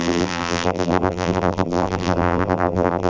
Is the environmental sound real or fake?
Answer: fake